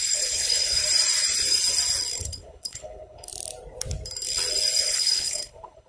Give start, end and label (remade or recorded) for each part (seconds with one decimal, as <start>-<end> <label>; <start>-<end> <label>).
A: 0.0-0.8 remade; 0.8-2.2 recorded; 2.2-3.3 remade; 3.3-4.8 recorded; 4.8-5.9 remade